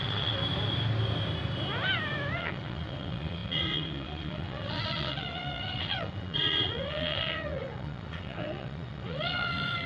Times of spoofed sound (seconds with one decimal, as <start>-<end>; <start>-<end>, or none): 0.0-0.4; 2.4-9.9